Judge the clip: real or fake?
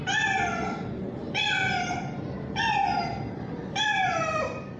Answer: fake